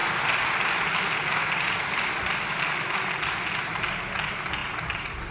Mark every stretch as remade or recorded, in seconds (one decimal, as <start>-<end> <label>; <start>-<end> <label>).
0.0-5.3 recorded